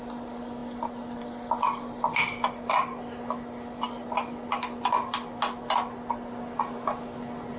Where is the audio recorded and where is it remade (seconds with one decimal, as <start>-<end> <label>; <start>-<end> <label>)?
0.0-7.6 recorded

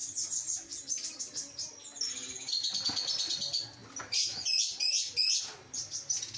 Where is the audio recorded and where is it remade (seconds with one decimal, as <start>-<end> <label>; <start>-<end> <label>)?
0.0-6.4 recorded

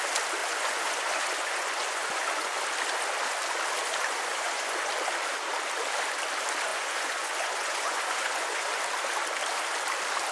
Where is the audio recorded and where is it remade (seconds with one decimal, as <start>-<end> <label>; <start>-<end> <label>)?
0.0-0.4 recorded; 0.4-2.6 remade; 2.6-4.3 recorded; 4.3-4.9 remade; 4.9-6.7 recorded; 6.7-8.8 remade; 8.8-10.3 recorded

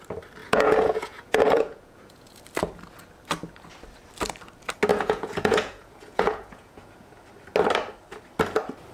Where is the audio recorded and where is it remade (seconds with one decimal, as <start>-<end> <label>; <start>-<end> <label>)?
0.0-0.4 recorded; 0.4-2.4 remade; 2.4-4.9 recorded; 4.9-7.1 remade; 7.1-8.9 recorded

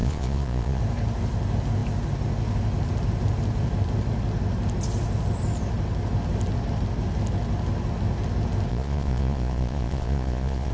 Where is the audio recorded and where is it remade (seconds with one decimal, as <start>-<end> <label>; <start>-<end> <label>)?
0.0-0.8 remade; 0.8-8.7 recorded; 8.7-10.7 remade

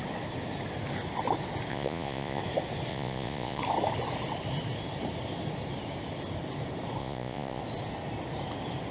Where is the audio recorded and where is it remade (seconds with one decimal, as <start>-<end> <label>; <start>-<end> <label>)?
0.0-1.7 recorded; 1.7-2.4 remade; 2.4-2.9 recorded; 2.9-3.6 remade; 3.6-7.0 recorded; 7.0-7.6 remade; 7.6-8.9 recorded

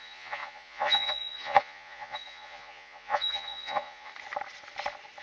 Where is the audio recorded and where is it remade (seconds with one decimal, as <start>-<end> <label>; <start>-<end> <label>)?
0.0-4.1 remade; 4.1-5.2 recorded